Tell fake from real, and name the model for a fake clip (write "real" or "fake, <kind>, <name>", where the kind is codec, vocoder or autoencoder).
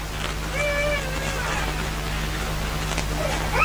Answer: real